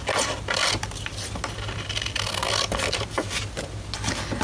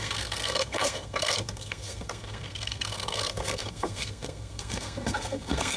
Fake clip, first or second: second